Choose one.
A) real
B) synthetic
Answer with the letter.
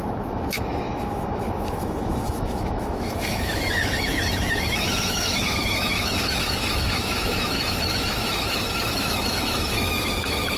B